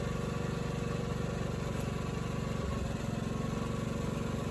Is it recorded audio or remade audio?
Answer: recorded